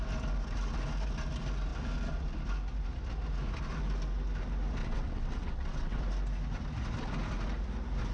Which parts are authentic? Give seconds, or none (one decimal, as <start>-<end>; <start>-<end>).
0.0-4.8; 6.0-8.1